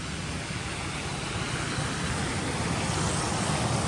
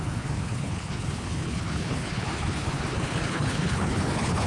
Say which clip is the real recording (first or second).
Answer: first